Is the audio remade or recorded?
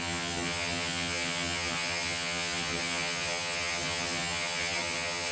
remade